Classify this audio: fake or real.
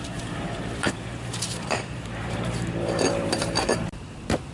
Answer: fake